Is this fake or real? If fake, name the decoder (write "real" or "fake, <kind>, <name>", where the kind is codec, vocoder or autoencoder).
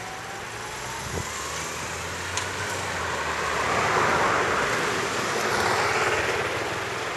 real